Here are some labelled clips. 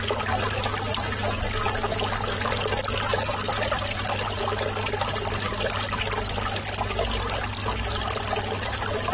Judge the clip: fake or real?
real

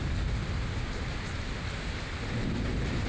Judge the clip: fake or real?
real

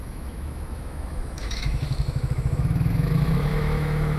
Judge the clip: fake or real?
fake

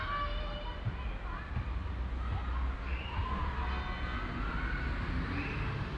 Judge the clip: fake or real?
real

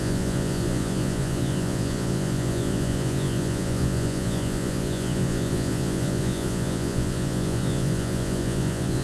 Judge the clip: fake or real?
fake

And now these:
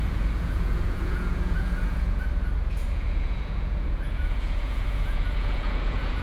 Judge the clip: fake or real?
fake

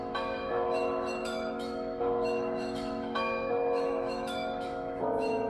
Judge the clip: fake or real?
fake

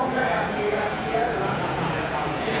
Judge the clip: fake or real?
fake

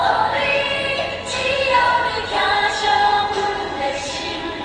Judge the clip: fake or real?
fake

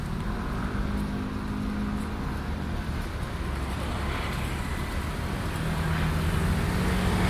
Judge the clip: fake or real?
real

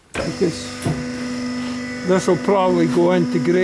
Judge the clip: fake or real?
real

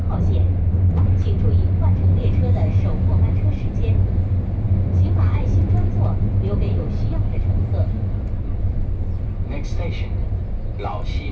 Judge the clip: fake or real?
real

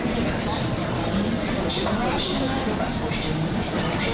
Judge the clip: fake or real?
fake